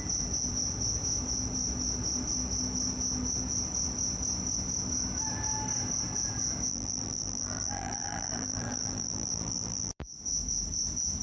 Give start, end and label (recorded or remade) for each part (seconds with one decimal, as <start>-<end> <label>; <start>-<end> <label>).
0.0-6.7 recorded; 6.7-10.0 remade; 10.0-11.2 recorded